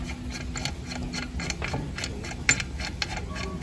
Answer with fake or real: real